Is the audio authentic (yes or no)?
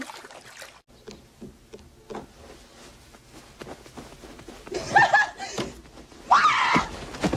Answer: yes